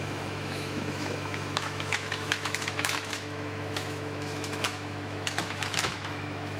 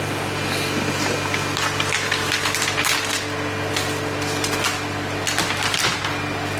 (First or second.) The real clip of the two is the second